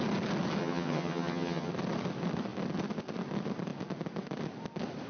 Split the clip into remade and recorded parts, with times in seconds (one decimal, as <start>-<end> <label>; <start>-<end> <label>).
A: 0.0-0.6 recorded; 0.6-1.7 remade; 1.7-5.1 recorded